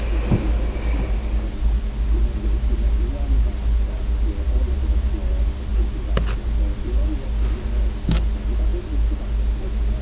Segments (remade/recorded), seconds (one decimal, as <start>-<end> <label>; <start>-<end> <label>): 0.0-10.0 recorded